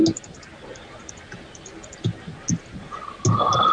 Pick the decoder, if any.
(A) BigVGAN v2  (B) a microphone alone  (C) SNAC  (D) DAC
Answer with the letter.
B